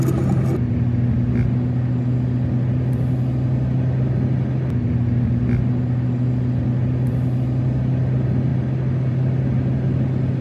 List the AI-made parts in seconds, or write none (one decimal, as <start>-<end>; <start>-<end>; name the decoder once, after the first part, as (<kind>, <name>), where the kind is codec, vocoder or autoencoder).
none